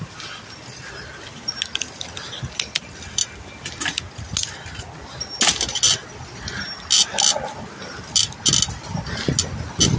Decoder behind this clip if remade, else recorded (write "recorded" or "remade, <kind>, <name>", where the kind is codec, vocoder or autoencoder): recorded